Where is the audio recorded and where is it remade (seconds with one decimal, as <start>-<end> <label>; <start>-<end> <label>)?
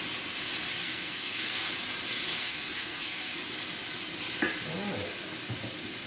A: 0.0-0.8 recorded; 0.8-1.7 remade; 1.7-2.3 recorded; 2.3-3.4 remade; 3.4-6.1 recorded